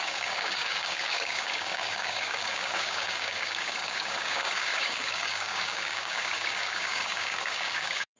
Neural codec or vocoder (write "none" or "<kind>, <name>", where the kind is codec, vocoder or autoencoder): codec, DAC